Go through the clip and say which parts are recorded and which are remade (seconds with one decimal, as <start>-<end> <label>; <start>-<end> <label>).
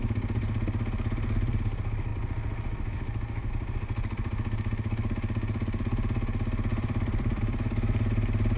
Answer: 0.0-6.7 recorded; 6.7-7.4 remade; 7.4-8.6 recorded